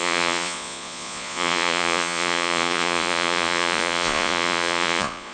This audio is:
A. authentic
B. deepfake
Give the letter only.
B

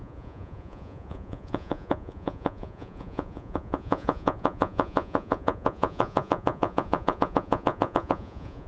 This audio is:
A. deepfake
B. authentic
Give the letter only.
A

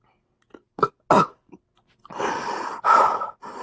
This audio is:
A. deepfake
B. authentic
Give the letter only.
B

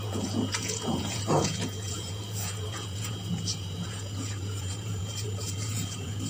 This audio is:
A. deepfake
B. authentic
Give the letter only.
A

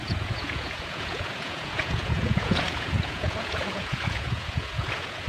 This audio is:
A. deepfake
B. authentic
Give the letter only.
A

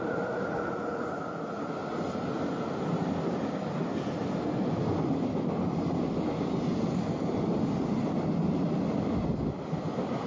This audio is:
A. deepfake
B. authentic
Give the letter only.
B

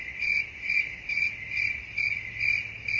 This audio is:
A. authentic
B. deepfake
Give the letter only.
A